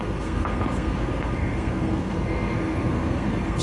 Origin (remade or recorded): remade